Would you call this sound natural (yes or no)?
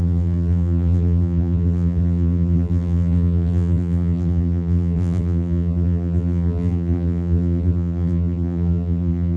no